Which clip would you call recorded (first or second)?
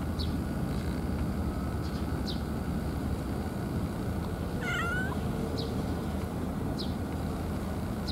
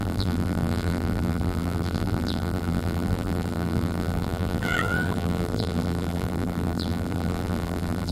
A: first